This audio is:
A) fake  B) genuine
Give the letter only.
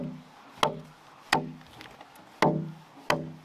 B